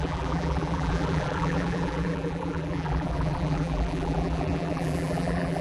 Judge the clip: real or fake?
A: fake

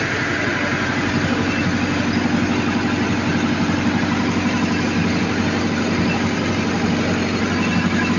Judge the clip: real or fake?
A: real